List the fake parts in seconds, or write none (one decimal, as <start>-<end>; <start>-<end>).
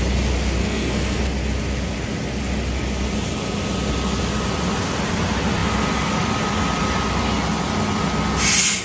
0.6-1.2